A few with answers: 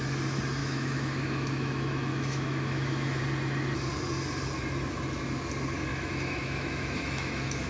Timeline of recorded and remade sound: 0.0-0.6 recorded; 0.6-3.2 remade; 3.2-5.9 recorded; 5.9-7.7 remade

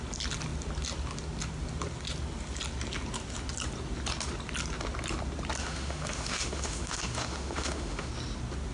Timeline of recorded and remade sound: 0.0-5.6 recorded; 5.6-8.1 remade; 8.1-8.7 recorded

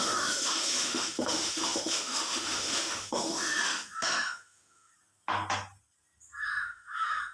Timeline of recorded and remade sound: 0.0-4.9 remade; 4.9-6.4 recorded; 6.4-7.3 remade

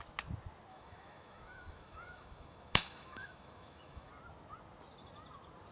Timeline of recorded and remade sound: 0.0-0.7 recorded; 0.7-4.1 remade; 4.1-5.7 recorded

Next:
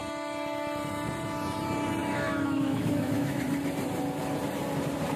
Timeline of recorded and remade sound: 0.0-2.0 recorded; 2.0-3.4 remade; 3.4-5.2 recorded

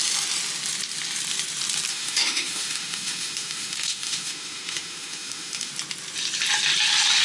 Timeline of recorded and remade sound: 0.0-1.9 recorded; 1.9-5.7 remade; 5.7-7.2 recorded